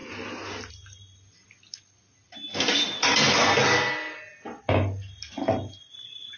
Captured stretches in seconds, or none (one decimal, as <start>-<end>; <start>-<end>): 0.0-6.4